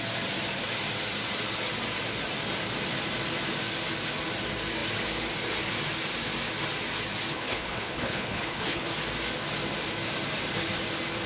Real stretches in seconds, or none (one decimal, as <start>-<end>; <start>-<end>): 0.0-7.3; 8.9-11.3